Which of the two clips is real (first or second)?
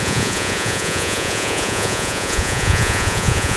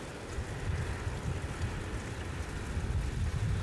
second